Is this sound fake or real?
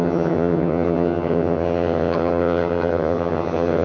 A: fake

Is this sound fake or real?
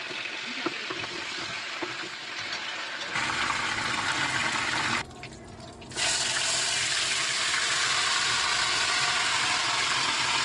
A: real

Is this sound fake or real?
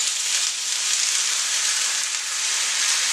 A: real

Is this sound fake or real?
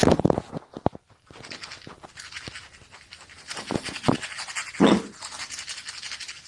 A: real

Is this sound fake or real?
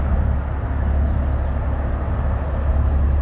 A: real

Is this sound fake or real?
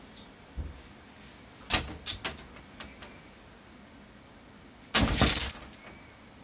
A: real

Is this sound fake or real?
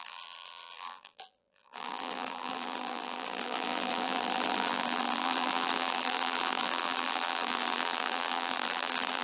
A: fake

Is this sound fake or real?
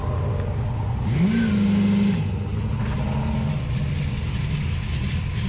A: real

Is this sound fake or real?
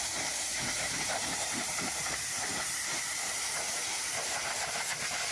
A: fake